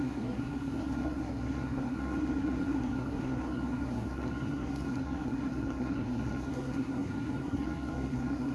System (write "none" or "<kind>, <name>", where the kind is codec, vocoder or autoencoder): codec, SNAC